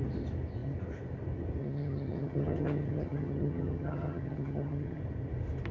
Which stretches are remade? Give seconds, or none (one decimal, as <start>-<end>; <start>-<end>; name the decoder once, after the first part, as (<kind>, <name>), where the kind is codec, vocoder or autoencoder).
1.6-5.0 (vocoder, HiFi-GAN)